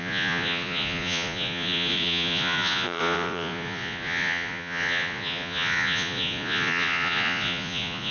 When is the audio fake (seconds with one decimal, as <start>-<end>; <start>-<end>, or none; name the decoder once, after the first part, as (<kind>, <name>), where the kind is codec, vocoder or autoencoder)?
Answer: 0.0-8.1 (vocoder, Vocos)